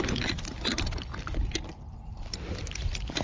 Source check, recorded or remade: recorded